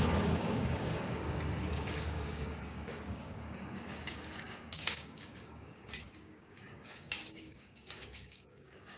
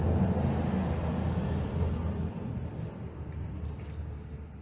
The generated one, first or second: first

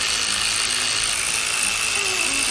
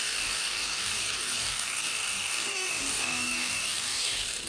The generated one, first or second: second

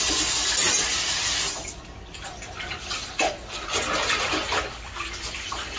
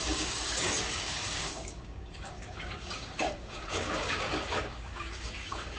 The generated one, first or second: second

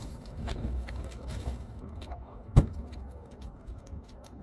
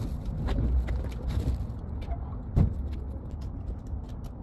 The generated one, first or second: first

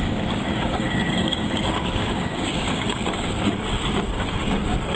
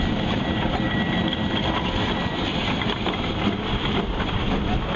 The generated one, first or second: first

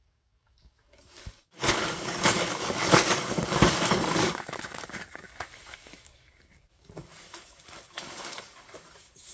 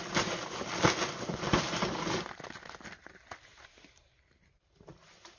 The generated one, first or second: first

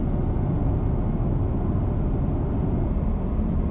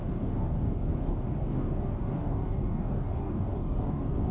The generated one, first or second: second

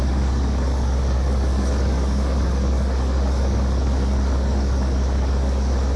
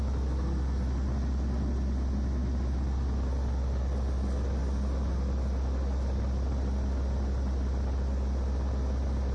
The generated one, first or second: first